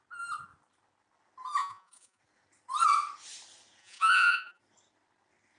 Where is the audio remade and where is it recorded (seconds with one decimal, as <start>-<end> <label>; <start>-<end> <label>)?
0.0-1.6 recorded; 1.6-2.2 remade; 2.2-3.8 recorded; 3.8-4.6 remade; 4.6-5.6 recorded